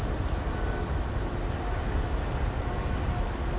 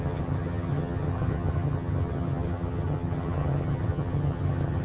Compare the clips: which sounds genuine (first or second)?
first